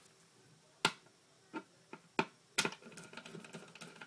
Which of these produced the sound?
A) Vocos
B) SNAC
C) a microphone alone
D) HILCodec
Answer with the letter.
C